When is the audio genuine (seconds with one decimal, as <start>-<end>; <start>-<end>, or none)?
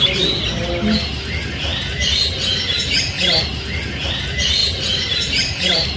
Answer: 0.0-4.6